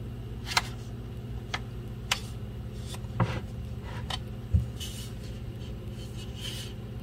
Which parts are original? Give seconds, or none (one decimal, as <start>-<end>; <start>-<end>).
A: 0.0-7.0